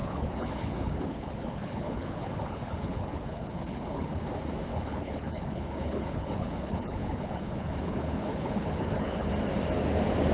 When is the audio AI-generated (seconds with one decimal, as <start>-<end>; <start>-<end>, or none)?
0.0-4.3; 4.7-9.3